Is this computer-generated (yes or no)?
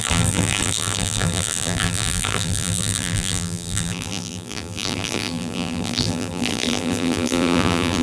yes